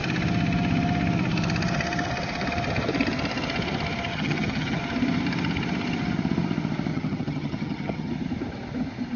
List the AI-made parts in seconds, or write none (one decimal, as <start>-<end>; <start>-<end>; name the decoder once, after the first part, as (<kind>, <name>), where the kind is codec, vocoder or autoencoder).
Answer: 4.1-4.8 (vocoder, HiFi-GAN); 6.9-8.1